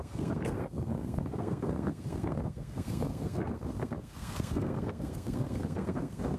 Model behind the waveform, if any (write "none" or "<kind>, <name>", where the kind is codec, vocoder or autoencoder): codec, SNAC